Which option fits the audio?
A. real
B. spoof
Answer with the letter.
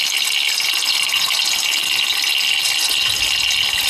A